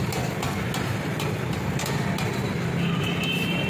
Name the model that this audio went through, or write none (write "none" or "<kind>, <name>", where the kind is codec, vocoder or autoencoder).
none